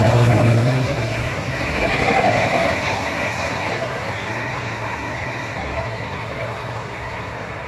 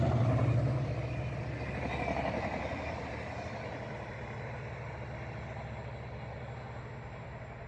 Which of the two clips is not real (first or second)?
first